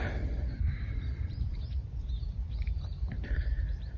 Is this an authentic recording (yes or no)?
no